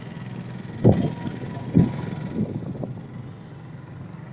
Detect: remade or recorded recorded